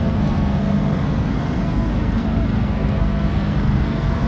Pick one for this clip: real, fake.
fake